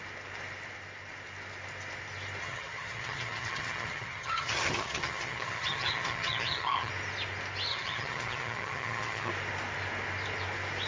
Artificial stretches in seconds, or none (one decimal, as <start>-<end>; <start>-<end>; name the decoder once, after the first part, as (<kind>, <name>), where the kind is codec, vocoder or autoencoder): 2.4-6.9 (vocoder, HiFi-GAN); 7.7-9.3